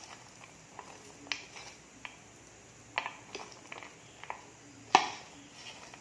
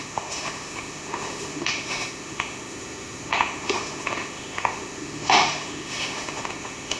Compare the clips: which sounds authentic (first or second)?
first